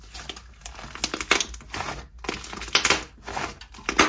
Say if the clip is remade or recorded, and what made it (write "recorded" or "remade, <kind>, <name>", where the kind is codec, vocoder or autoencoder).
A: recorded